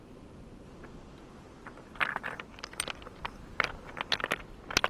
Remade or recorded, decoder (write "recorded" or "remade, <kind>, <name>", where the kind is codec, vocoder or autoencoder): remade, vocoder, BigVGAN v2